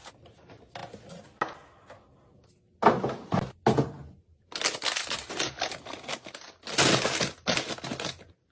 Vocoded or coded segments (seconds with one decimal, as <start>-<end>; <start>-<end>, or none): none